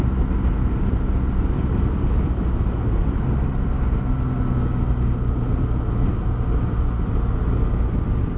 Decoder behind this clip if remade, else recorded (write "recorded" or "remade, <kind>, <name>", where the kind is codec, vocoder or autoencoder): recorded